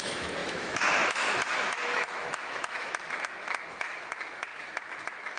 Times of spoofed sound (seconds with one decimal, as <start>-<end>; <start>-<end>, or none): 0.0-5.4